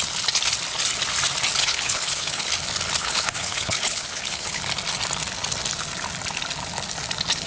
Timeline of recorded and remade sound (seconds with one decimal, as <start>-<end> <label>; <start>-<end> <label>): 0.0-1.6 recorded; 1.6-2.5 remade; 2.5-3.0 recorded; 3.0-4.6 remade; 4.6-7.5 recorded